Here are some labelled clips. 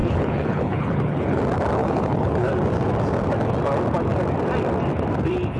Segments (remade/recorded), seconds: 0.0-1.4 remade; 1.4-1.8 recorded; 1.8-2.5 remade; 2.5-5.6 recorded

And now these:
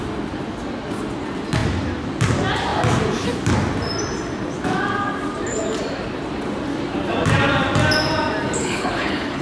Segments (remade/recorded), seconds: 0.0-8.6 recorded; 8.6-9.4 remade

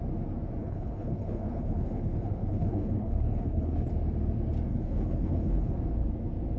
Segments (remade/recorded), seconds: 0.0-0.6 recorded; 0.6-3.9 remade; 3.9-4.7 recorded; 4.7-5.7 remade; 5.7-6.6 recorded

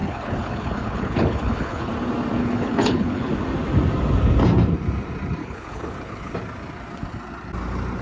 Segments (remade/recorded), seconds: 0.0-1.9 remade; 1.9-2.4 recorded; 2.4-3.3 remade; 3.3-5.4 recorded; 5.4-6.3 remade; 6.3-8.0 recorded